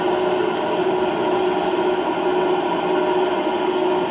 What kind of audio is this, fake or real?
real